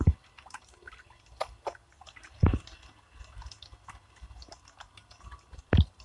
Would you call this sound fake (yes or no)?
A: no